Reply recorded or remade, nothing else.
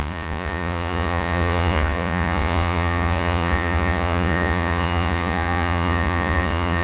remade